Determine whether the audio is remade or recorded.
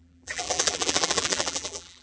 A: remade